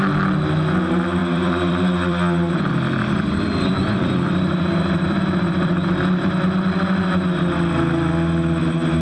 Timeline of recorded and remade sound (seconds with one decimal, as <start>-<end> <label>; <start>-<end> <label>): 0.0-1.2 recorded; 1.2-6.3 remade; 6.3-9.0 recorded